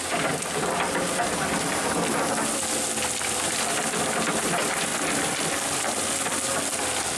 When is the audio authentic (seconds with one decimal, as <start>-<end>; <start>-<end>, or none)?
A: 0.0-7.2